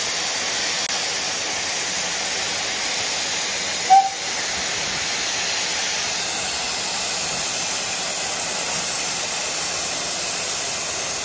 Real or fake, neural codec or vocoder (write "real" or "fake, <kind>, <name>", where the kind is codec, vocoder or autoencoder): real